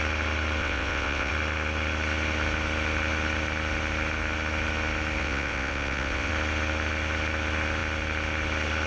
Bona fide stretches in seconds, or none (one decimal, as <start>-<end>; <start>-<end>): 0.0-0.6; 1.3-5.2; 6.3-8.9